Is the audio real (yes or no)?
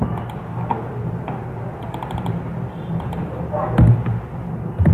yes